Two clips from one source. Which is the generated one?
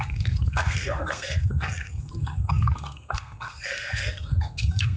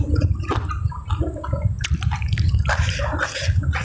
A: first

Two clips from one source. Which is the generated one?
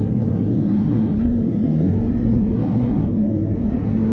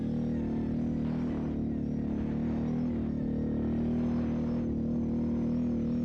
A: first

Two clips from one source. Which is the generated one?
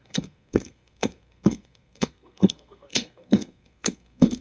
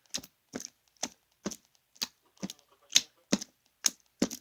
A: first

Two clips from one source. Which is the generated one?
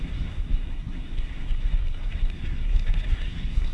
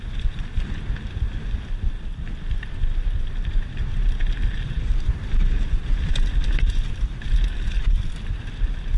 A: first